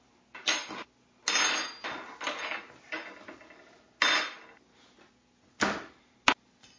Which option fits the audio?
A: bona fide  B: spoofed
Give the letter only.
A